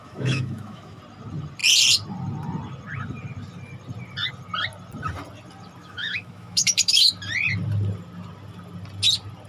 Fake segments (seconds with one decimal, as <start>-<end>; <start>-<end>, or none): 0.0-1.0; 5.8-7.1